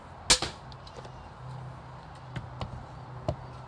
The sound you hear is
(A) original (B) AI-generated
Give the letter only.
A